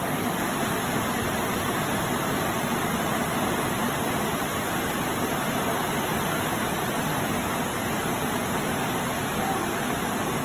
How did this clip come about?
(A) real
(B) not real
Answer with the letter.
A